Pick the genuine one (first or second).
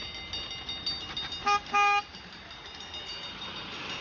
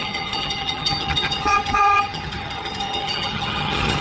first